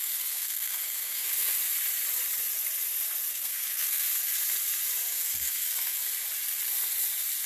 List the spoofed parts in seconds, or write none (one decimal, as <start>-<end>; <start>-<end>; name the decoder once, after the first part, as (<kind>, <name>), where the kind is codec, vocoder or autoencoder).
0.0-1.6 (codec, SNAC); 3.3-4.2; 5.1-6.0